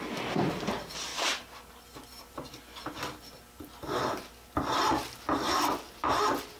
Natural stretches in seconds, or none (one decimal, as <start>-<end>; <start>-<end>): 0.0-6.6